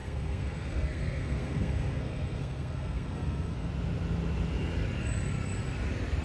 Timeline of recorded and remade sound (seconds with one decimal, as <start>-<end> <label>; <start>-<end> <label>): 0.0-3.7 remade; 3.7-6.2 recorded